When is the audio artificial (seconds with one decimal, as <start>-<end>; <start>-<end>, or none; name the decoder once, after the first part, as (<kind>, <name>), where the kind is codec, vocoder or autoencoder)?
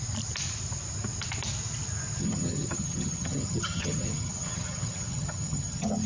2.2-6.1 (vocoder, HiFi-GAN)